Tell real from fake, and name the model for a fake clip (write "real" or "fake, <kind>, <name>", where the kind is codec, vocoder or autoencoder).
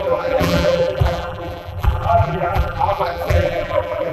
fake, vocoder, BigVGAN v2